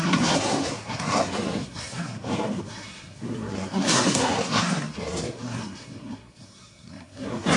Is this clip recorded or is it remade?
remade